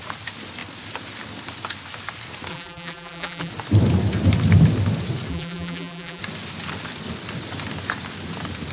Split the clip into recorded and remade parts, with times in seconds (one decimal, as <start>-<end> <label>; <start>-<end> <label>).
0.0-2.5 recorded; 2.5-3.5 remade; 3.5-5.3 recorded; 5.3-6.2 remade; 6.2-8.7 recorded